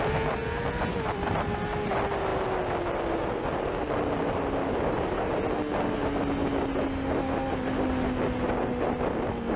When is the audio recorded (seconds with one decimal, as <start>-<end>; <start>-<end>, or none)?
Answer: 0.0-9.6